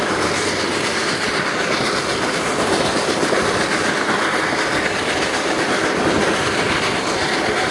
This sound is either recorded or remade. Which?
recorded